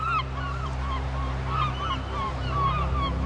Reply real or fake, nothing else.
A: fake